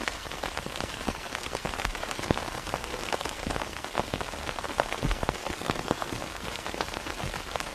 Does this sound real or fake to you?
fake